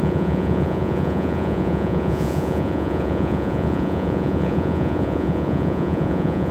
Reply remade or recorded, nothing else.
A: remade